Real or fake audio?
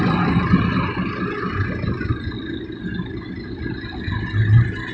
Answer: real